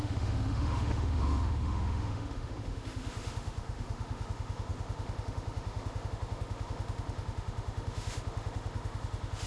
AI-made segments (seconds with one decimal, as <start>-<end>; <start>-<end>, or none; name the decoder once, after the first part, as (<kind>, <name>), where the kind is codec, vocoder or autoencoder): 0.0-9.5 (autoencoder, DAC-VAE)